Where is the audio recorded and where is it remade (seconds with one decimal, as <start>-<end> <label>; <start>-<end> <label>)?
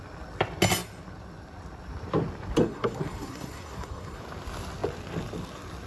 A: 0.0-2.6 recorded; 2.6-4.2 remade; 4.2-5.9 recorded